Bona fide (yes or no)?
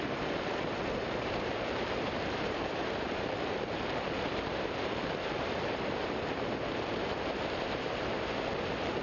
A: no